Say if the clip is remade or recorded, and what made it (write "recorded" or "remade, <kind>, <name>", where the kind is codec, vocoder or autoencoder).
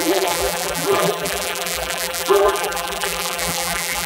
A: remade, vocoder, BigVGAN v2